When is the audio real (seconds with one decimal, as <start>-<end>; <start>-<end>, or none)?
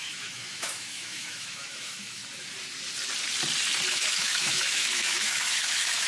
2.2-3.9